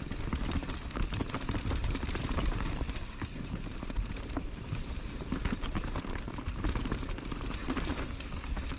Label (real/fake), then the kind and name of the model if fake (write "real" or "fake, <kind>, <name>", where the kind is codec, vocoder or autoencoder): fake, vocoder, BigVGAN v2